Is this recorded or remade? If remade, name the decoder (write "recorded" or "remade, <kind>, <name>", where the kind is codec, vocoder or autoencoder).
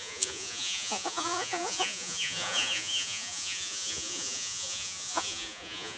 remade, vocoder, Vocos